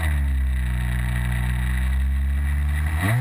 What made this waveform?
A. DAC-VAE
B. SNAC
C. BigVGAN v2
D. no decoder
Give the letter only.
D